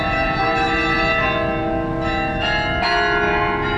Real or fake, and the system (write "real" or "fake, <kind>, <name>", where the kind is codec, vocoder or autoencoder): real